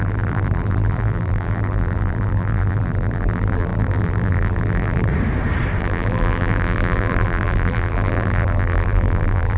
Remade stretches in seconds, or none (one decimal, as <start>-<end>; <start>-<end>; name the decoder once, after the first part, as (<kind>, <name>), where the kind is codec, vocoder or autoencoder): 0.0-5.1 (vocoder, BigVGAN v2); 5.8-9.6